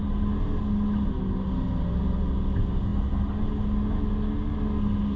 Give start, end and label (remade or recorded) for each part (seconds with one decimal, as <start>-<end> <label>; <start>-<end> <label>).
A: 0.0-5.2 recorded